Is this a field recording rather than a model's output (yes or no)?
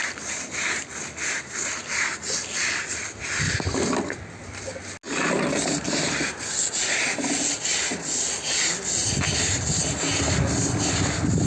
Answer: yes